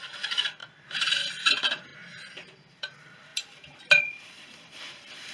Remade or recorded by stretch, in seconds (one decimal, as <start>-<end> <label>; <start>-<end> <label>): 0.0-1.9 remade; 1.9-2.7 recorded; 2.7-5.3 remade